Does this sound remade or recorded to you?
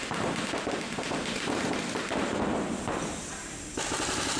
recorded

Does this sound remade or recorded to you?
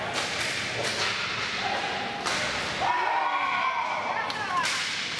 recorded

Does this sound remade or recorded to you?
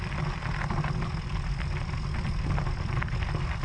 recorded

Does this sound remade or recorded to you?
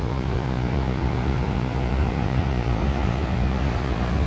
remade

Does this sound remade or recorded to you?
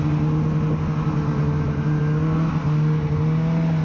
recorded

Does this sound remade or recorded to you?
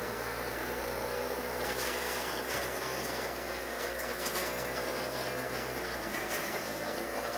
remade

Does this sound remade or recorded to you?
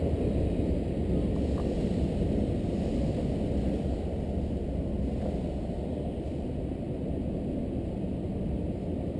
recorded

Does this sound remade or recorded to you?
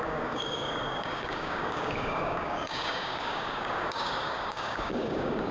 remade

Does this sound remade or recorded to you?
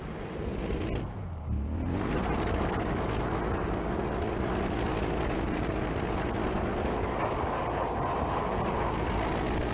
recorded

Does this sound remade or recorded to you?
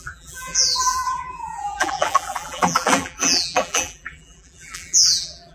remade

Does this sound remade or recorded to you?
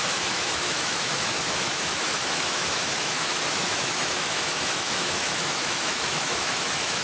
remade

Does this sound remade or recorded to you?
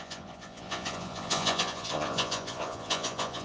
remade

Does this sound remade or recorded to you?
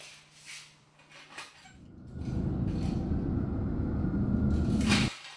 recorded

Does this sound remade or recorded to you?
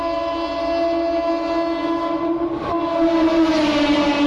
recorded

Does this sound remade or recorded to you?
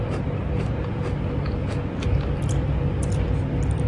recorded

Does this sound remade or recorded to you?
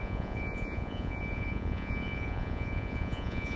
remade